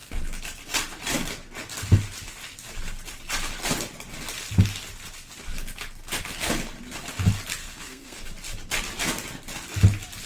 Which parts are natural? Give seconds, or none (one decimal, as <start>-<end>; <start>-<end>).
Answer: 0.0-7.6; 8.3-10.3